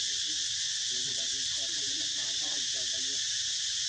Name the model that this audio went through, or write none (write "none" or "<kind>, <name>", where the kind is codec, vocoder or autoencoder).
none